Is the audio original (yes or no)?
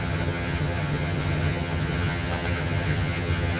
no